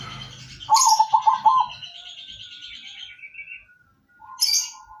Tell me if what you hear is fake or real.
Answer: real